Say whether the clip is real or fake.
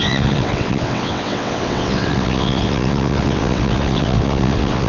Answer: fake